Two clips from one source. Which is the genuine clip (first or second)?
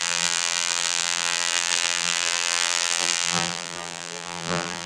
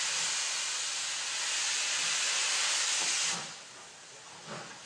second